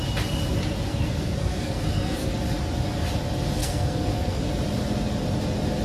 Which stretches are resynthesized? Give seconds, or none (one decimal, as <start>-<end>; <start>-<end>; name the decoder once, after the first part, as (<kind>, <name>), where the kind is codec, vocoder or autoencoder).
0.9-2.3 (codec, SNAC); 3.6-4.5